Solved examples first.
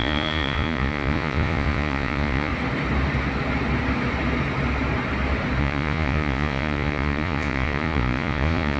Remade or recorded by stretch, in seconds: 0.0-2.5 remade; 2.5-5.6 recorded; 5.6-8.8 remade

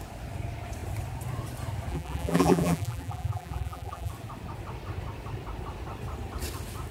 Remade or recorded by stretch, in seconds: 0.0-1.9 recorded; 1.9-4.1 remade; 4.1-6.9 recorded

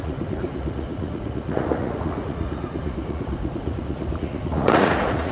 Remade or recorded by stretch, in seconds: 0.0-5.3 remade